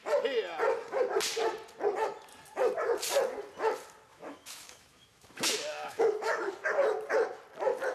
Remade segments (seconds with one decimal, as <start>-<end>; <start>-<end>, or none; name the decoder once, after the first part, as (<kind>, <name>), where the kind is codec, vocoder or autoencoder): 4.1-6.5 (autoencoder, DAC-VAE)